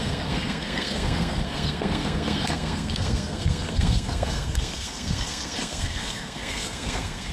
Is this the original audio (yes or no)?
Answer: no